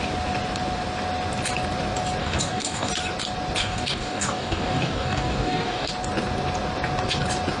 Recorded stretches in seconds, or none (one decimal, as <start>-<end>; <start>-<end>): 0.0-2.2; 2.9-3.6; 5.9-7.6